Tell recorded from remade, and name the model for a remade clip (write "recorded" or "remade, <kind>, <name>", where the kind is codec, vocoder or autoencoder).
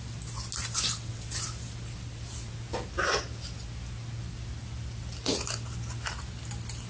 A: recorded